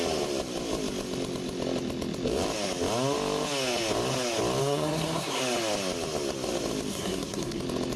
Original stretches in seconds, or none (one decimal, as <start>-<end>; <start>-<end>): 0.0-4.6; 5.4-6.9; 7.6-8.0